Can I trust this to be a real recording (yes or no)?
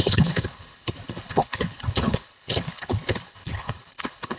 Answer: no